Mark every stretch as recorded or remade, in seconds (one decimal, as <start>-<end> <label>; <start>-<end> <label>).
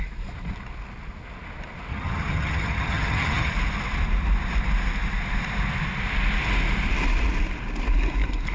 0.0-1.9 recorded; 1.9-3.5 remade; 3.5-8.5 recorded